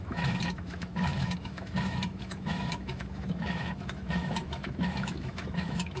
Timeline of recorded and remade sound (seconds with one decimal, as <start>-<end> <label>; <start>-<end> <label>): 0.0-6.0 remade